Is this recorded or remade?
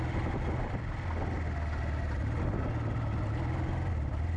recorded